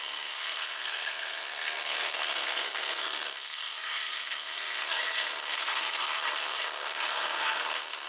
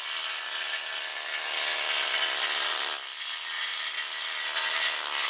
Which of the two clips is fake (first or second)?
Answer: first